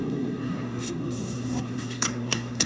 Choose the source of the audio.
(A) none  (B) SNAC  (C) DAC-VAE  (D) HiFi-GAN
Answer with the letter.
B